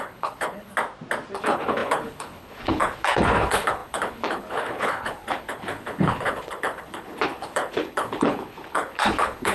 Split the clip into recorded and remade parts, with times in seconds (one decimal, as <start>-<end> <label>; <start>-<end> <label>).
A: 0.0-0.7 remade; 0.7-1.4 recorded; 1.4-9.5 remade